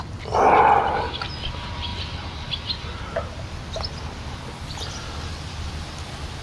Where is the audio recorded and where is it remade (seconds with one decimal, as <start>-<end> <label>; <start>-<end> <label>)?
0.0-6.4 recorded